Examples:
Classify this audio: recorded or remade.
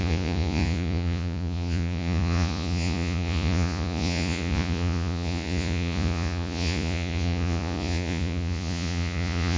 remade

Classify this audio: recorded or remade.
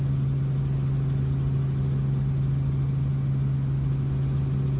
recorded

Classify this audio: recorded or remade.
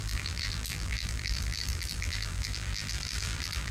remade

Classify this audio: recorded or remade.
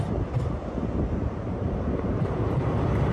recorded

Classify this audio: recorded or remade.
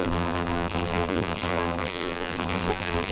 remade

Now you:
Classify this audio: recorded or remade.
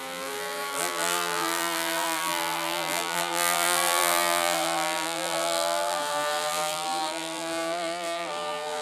remade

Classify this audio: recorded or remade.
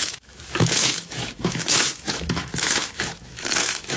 remade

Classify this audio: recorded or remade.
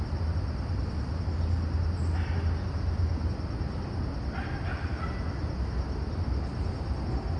recorded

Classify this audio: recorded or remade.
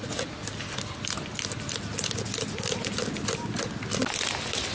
recorded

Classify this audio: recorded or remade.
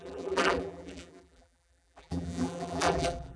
remade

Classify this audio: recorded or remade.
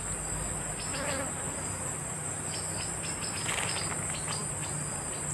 recorded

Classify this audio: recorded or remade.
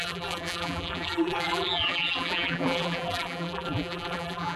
remade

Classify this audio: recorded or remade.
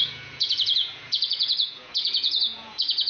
remade